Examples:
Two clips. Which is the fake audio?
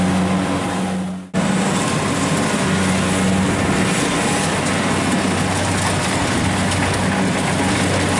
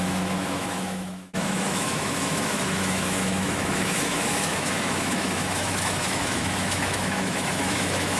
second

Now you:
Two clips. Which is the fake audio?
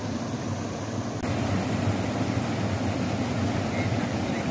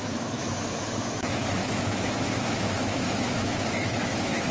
second